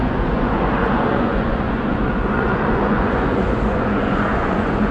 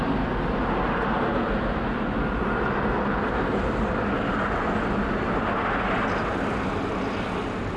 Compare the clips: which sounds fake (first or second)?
first